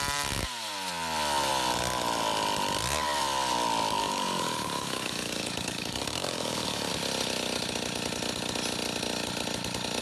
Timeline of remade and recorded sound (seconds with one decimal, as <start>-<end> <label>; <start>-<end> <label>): 0.0-4.0 recorded; 4.0-6.9 remade; 6.9-10.0 recorded

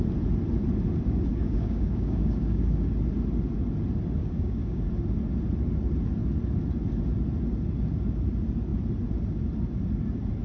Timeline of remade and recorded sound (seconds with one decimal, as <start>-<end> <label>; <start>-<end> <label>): 0.0-1.3 recorded; 1.3-2.9 remade; 2.9-4.2 recorded; 4.2-4.9 remade; 4.9-10.4 recorded

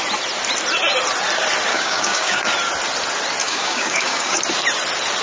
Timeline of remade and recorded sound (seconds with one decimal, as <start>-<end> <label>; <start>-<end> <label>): 0.0-1.7 recorded; 1.7-2.4 remade; 2.4-3.4 recorded; 3.4-4.4 remade; 4.4-5.2 recorded

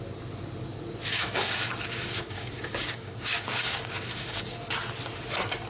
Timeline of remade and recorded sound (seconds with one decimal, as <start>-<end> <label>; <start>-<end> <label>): 0.0-1.1 recorded; 1.1-4.5 remade; 4.5-5.7 recorded